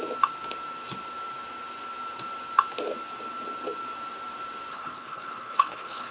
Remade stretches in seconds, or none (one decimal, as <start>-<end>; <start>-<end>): 4.7-6.1

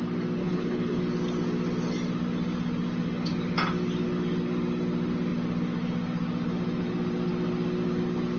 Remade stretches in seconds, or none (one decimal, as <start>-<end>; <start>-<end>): 0.4-1.0

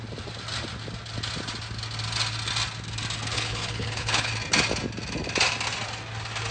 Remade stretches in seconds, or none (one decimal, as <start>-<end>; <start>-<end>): 3.3-4.3

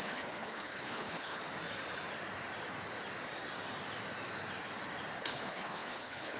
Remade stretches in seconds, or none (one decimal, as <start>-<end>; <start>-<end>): 0.0-1.4; 5.2-6.4

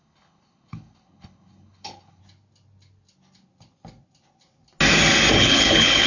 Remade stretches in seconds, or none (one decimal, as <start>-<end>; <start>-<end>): 0.0-2.2; 5.3-6.1